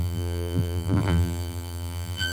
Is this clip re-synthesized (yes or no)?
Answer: yes